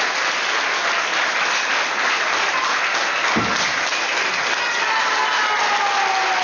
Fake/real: real